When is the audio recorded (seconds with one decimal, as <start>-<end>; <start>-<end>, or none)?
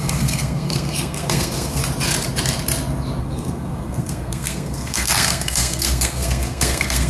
1.8-3.2